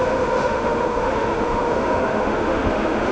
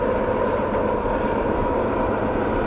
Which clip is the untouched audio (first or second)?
second